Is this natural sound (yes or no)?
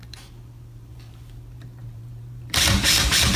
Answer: no